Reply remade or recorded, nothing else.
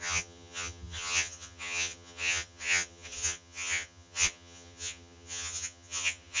remade